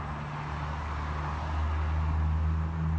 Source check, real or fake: real